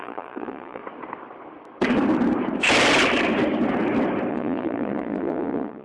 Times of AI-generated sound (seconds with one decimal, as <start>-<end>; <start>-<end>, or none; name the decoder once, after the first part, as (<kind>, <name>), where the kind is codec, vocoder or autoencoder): 0.0-0.8 (vocoder, Vocos); 4.3-5.8